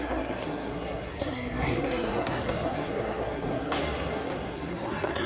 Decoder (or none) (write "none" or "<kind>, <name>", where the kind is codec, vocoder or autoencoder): codec, SNAC